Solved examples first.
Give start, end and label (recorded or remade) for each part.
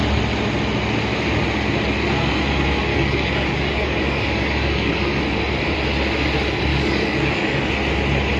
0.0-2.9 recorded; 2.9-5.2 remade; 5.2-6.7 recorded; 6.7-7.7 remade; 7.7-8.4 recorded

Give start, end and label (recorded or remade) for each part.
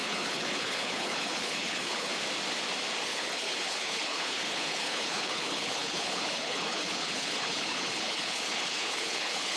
0.0-2.1 remade; 2.1-3.0 recorded; 3.0-9.6 remade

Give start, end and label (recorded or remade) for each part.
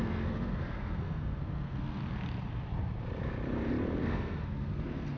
0.0-2.0 remade; 2.0-4.0 recorded; 4.0-5.2 remade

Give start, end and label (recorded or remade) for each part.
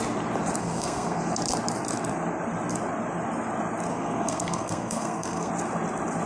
0.0-0.6 recorded; 0.6-1.2 remade; 1.2-3.9 recorded; 3.9-5.5 remade; 5.5-6.3 recorded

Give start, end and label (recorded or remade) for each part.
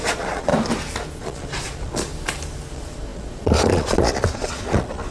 0.0-0.5 remade; 0.5-1.2 recorded; 1.2-2.1 remade; 2.1-2.7 recorded; 2.7-5.1 remade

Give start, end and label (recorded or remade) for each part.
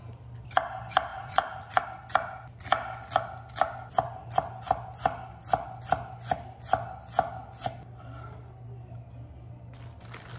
0.0-1.1 recorded; 1.1-1.8 remade; 1.8-10.4 recorded